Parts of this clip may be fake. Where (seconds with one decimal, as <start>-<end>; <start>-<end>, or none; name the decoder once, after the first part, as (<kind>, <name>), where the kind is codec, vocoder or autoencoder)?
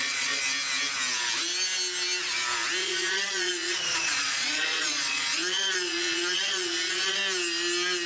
0.0-0.4 (vocoder, Vocos); 2.8-7.2